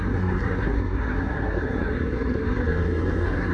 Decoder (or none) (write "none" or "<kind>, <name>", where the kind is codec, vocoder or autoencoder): codec, SNAC